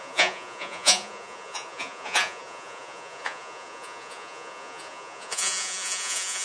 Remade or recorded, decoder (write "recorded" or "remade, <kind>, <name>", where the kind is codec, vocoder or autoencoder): remade, vocoder, Vocos